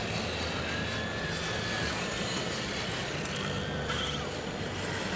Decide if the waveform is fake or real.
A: real